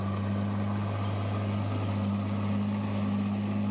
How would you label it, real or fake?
real